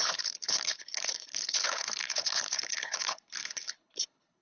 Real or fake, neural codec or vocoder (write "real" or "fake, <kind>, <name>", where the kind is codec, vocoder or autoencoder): fake, codec, HILCodec